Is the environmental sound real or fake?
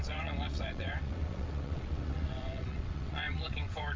fake